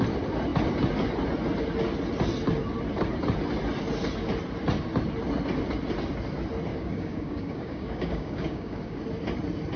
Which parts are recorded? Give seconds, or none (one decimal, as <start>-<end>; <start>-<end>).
0.0-6.7; 9.0-9.8